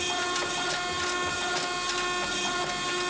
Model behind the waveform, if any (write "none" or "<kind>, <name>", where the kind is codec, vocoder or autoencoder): none